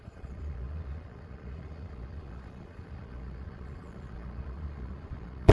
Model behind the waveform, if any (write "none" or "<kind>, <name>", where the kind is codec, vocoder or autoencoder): vocoder, Vocos